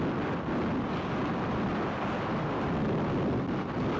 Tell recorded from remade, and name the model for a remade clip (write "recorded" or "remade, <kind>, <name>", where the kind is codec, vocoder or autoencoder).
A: recorded